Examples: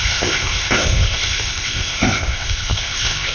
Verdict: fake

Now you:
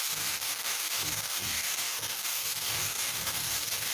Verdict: fake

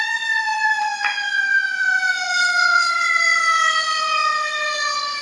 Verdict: fake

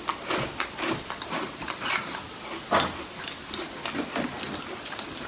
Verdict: real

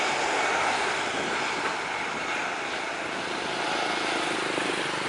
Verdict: real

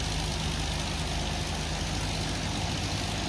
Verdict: real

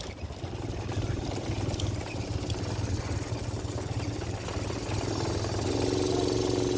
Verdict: real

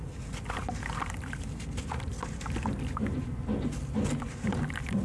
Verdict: real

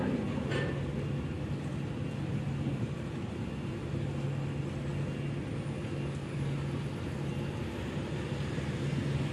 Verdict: real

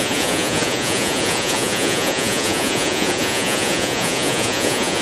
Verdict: fake